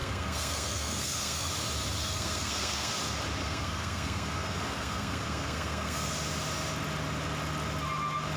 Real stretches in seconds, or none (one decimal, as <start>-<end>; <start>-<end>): 1.5-2.0; 2.9-3.4; 6.1-8.4